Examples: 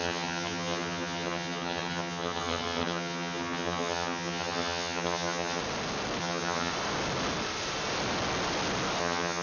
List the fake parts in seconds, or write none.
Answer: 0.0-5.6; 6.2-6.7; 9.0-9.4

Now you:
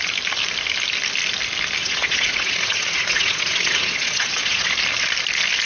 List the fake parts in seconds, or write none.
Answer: 1.8-4.7

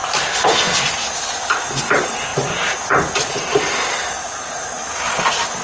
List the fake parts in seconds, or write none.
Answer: 2.3-3.3; 4.2-4.8